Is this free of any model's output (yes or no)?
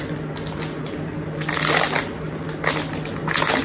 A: yes